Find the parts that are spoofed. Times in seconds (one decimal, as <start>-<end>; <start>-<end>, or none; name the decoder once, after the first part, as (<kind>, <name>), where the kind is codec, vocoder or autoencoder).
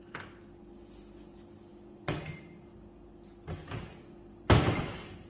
none